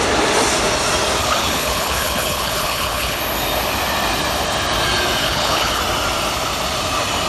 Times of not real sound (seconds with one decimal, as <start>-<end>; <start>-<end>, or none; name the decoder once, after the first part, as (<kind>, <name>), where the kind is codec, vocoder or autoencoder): 1.2-3.2 (codec, HILCodec); 5.2-5.8